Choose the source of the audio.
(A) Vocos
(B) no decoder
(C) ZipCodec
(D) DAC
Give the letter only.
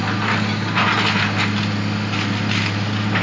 B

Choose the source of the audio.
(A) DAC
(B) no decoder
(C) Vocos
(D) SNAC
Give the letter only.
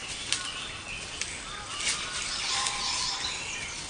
B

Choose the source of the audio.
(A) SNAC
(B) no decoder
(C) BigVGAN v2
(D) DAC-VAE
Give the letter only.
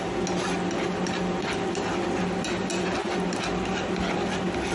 B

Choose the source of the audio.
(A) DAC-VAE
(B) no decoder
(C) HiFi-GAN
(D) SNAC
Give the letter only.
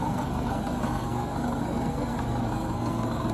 D